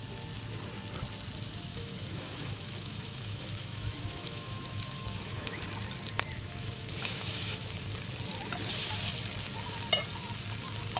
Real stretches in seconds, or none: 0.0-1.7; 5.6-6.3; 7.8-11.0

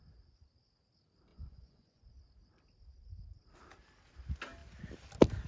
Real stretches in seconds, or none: 0.0-1.3; 2.0-5.5

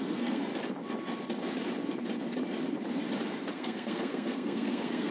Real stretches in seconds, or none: 0.4-3.5

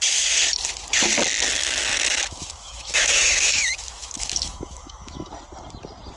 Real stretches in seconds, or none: 0.0-1.6; 5.3-6.2

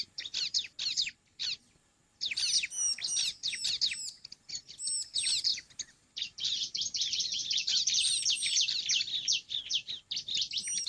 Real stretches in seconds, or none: 0.0-5.5; 10.5-10.9